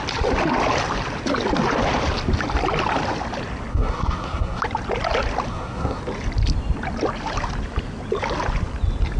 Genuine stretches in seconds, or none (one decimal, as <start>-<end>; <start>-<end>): 0.0-3.7; 4.6-5.5; 6.0-9.2